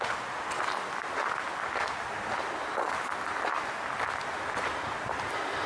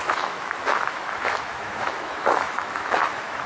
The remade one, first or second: second